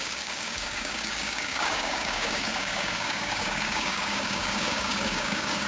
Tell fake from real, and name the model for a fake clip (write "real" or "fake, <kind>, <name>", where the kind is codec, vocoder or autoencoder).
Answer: fake, codec, DAC